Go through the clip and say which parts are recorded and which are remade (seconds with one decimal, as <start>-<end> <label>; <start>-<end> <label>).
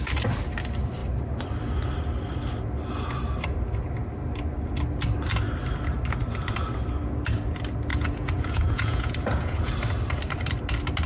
0.0-7.9 recorded; 7.9-9.7 remade; 9.7-11.1 recorded